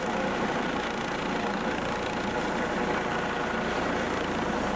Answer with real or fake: real